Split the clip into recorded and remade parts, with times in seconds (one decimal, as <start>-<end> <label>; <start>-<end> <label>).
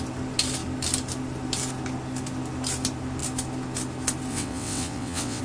0.0-4.3 recorded; 4.3-5.4 remade